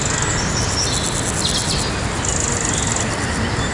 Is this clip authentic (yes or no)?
yes